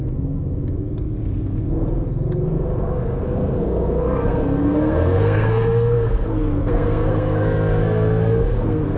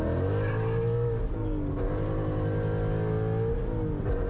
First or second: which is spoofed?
first